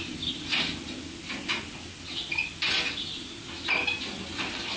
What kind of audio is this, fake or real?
real